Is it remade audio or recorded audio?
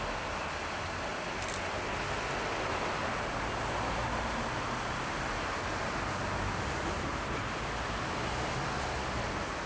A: recorded